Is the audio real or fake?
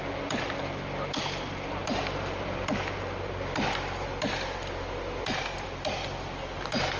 real